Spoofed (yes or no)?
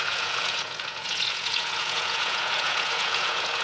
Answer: yes